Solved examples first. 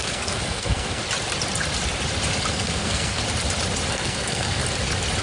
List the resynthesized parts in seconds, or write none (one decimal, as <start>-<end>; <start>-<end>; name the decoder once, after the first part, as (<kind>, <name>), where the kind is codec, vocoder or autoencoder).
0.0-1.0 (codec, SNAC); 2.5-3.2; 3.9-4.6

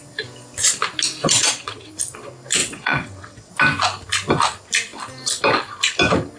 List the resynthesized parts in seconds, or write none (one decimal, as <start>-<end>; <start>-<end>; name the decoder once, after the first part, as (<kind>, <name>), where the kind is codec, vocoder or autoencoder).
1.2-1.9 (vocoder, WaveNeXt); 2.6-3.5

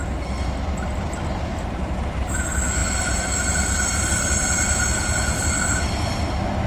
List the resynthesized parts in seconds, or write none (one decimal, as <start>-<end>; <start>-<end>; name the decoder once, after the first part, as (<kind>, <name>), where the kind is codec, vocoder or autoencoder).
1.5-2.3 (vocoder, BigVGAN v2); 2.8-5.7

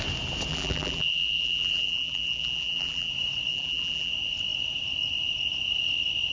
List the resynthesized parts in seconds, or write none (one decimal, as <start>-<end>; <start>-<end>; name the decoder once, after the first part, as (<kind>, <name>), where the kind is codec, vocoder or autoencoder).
0.5-3.1 (vocoder, BigVGAN v2); 3.5-4.1

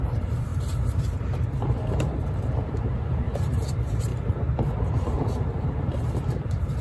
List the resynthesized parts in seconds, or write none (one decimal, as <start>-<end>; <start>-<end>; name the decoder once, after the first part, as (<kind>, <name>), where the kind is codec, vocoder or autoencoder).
0.0-4.1 (vocoder, BigVGAN v2); 4.8-6.8

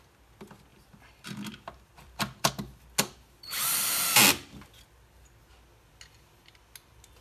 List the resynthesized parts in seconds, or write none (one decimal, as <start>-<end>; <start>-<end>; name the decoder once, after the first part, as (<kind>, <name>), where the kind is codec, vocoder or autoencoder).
0.7-2.5 (vocoder, BigVGAN v2)